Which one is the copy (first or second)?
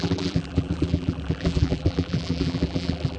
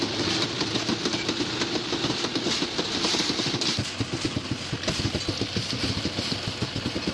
first